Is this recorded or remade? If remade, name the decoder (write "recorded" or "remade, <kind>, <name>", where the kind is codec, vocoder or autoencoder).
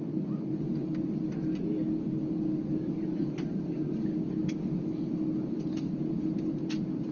recorded